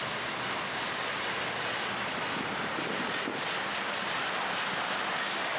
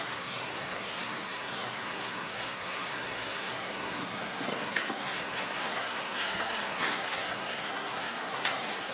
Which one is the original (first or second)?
first